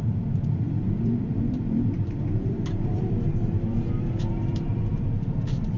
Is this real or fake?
fake